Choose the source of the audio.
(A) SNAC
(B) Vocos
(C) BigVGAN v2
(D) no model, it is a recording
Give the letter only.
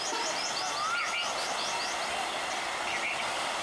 D